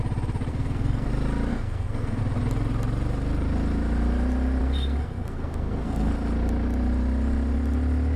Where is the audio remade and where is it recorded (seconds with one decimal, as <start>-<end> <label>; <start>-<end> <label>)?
0.0-0.5 recorded; 0.5-1.1 remade; 1.1-1.5 recorded; 1.5-2.2 remade; 2.2-4.6 recorded; 4.6-6.1 remade; 6.1-8.2 recorded

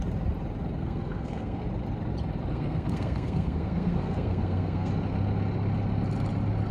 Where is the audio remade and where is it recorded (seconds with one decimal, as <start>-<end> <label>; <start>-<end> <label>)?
0.0-0.8 recorded; 0.8-1.6 remade; 1.6-2.5 recorded; 2.5-4.9 remade; 4.9-6.7 recorded

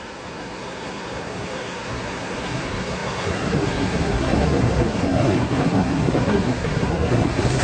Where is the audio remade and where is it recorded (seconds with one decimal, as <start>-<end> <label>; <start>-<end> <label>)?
0.0-7.6 remade

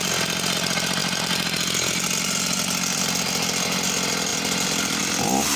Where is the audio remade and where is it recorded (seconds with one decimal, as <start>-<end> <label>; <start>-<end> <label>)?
0.0-5.6 recorded

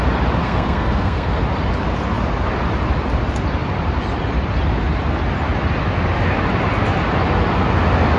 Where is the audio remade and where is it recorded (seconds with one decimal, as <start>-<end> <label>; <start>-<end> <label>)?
0.0-0.4 recorded; 0.4-1.4 remade; 1.4-8.2 recorded

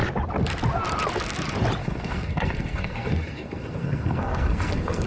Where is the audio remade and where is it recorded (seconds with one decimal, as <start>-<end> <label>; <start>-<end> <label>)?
0.0-1.8 recorded; 1.8-5.1 remade

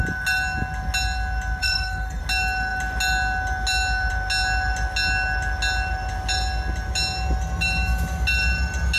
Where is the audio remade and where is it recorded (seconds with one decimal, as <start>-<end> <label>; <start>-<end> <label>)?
0.0-1.6 recorded; 1.6-2.2 remade; 2.2-9.0 recorded